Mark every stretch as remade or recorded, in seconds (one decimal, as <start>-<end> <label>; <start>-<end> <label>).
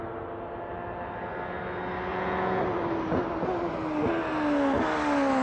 0.0-2.1 recorded; 2.1-2.6 remade; 2.6-5.4 recorded